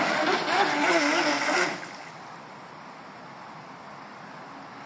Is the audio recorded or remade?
recorded